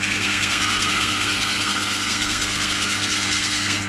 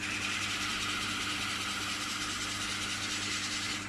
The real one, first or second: second